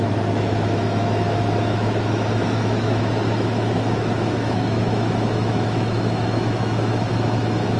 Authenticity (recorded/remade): remade